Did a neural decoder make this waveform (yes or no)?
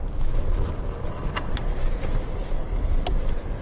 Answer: no